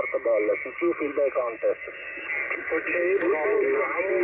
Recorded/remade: recorded